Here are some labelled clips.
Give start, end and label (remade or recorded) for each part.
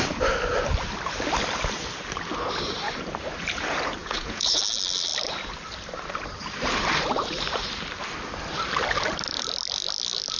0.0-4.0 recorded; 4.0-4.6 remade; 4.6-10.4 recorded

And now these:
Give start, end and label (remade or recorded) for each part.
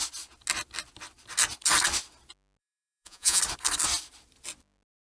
0.0-2.6 recorded; 2.6-3.4 remade; 3.4-5.1 recorded